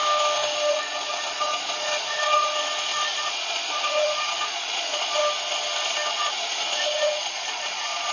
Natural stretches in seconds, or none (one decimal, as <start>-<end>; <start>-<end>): 0.0-0.7; 5.2-6.1